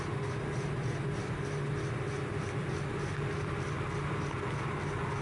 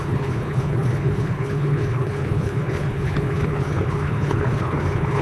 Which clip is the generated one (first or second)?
second